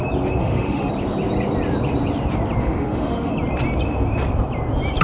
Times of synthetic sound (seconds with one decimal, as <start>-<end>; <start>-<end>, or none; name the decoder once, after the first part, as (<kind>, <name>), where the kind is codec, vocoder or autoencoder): 0.4-0.9 (autoencoder, DAC-VAE); 2.6-3.3